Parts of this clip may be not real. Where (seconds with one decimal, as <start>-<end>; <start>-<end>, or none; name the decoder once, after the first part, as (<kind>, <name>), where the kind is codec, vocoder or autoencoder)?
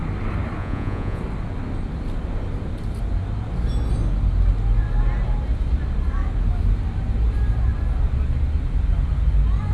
0.6-1.2 (vocoder, Vocos)